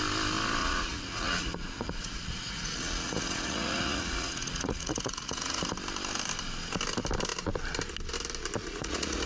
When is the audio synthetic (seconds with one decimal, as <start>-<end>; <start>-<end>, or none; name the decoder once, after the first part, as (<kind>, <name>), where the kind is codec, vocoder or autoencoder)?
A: 0.6-5.6 (vocoder, Vocos); 8.6-9.3